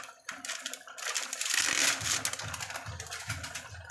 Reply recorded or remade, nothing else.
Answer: recorded